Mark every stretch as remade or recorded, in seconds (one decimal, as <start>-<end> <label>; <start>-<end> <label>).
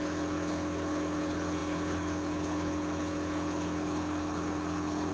0.0-5.1 remade